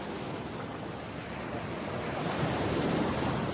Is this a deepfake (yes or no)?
no